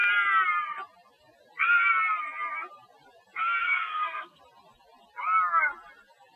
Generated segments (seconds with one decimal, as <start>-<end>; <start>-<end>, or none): 3.6-4.4